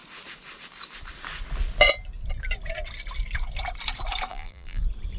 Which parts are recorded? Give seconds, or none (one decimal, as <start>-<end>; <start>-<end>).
0.0-4.3; 4.8-5.2